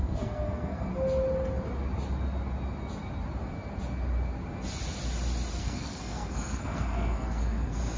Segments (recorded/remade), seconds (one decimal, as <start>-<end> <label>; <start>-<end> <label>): 0.0-0.9 remade; 0.9-5.6 recorded; 5.6-8.0 remade

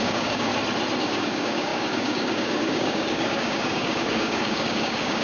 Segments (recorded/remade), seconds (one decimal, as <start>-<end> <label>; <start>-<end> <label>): 0.0-0.5 remade; 0.5-1.0 recorded; 1.0-5.2 remade

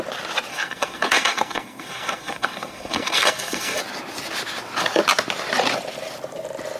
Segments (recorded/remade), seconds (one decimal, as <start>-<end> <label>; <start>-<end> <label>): 0.0-0.5 recorded; 0.5-3.8 remade; 3.8-6.8 recorded

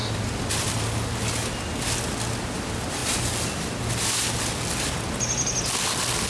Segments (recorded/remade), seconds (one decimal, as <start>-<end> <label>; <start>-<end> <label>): 0.0-6.3 recorded

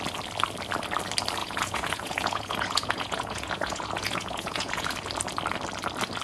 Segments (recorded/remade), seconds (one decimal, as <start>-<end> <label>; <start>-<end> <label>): 0.0-1.4 recorded; 1.4-4.9 remade; 4.9-6.2 recorded

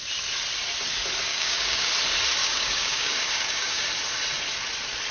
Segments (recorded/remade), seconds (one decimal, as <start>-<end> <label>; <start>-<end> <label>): 0.0-1.3 recorded; 1.3-1.9 remade; 1.9-2.4 recorded; 2.4-3.9 remade; 3.9-5.1 recorded